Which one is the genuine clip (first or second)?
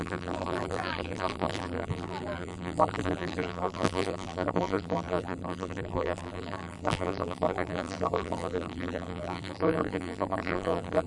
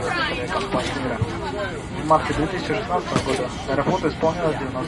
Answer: second